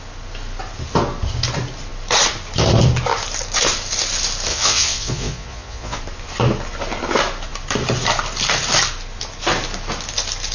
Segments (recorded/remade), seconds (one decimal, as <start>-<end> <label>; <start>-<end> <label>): 0.0-4.5 recorded; 4.5-6.0 remade; 6.0-10.5 recorded